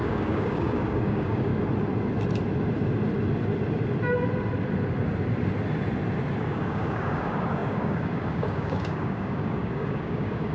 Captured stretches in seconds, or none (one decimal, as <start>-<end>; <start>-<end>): 1.5-6.4